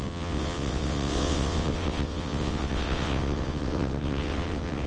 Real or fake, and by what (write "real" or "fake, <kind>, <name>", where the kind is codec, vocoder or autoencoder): fake, vocoder, WaveNeXt